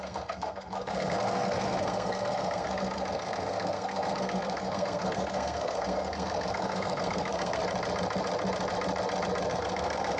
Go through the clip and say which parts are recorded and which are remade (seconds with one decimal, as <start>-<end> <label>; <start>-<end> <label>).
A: 0.0-7.6 remade; 7.6-9.5 recorded; 9.5-10.2 remade